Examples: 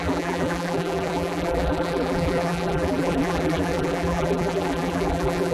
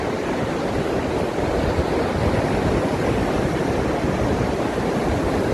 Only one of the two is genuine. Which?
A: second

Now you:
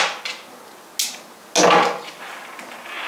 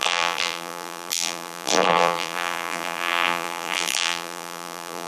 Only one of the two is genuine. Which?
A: first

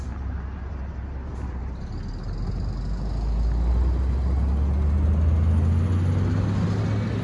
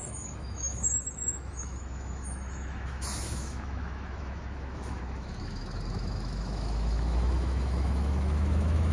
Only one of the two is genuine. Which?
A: first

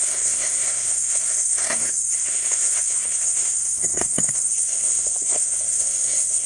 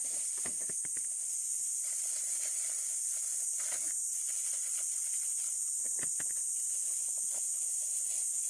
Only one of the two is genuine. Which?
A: second